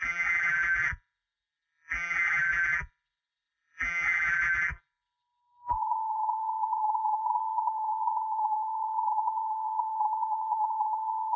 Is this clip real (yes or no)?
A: no